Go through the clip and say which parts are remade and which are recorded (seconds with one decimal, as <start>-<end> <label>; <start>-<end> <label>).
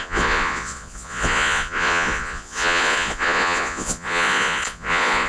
0.0-5.3 remade